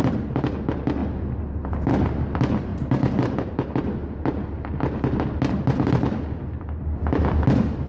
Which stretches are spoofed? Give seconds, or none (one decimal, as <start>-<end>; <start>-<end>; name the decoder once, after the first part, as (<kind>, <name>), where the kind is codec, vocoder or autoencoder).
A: 2.7-3.5 (vocoder, BigVGAN v2)